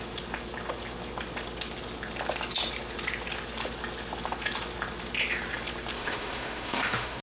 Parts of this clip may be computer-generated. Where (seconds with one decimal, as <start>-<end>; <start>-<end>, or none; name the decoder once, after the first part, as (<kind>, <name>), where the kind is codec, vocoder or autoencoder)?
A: 6.0-7.2 (autoencoder, DAC-VAE)